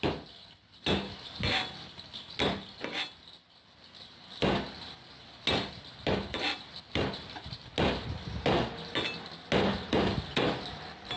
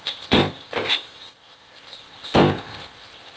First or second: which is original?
first